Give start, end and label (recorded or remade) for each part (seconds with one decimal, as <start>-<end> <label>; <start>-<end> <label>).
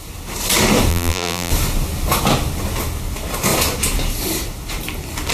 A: 0.0-0.9 recorded; 0.9-1.5 remade; 1.5-5.3 recorded